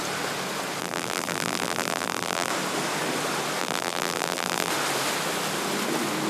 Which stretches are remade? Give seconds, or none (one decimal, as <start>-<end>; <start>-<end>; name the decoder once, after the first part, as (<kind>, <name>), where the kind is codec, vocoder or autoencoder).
0.8-2.5 (vocoder, BigVGAN v2); 3.6-4.7